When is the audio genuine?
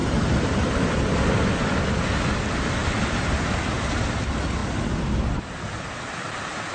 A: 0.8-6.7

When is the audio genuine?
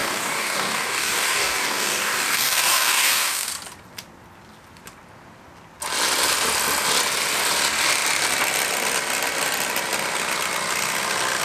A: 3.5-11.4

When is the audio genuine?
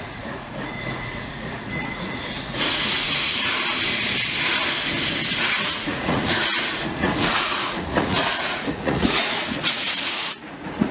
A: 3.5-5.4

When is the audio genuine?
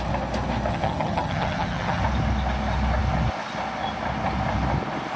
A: 0.0-0.7; 2.0-5.2